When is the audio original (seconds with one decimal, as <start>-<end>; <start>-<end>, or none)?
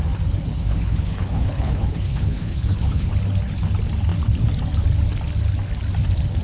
0.0-0.5; 3.1-6.4